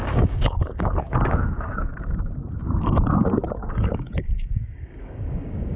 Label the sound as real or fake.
fake